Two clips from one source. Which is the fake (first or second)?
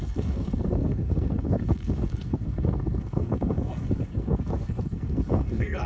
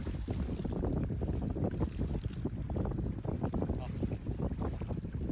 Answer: first